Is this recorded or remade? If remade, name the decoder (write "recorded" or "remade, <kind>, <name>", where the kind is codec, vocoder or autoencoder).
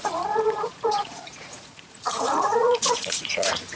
remade, vocoder, Vocos